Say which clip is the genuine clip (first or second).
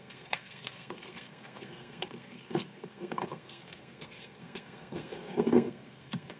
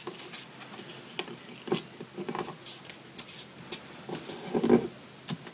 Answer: second